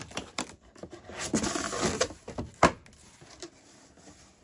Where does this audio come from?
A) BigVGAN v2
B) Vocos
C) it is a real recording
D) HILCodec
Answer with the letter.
C